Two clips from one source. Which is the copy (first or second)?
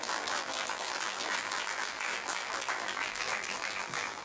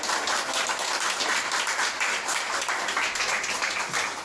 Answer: first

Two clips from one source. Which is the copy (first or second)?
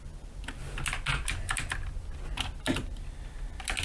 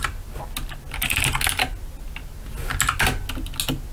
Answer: first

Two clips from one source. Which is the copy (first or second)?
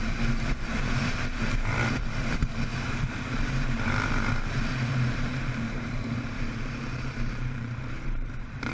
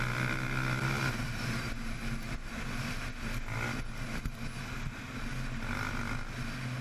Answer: first